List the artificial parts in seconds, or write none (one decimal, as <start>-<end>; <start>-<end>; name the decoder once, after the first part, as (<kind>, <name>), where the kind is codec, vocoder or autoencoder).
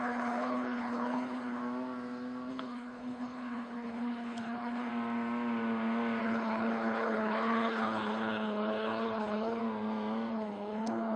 0.0-1.6 (codec, HILCodec); 2.5-4.9; 6.2-9.6; 10.3-11.2